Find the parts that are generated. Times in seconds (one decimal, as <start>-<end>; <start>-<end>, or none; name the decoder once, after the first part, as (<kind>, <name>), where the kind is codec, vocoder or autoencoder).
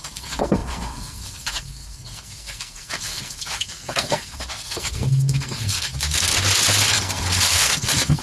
0.0-6.3 (codec, SNAC); 6.9-8.2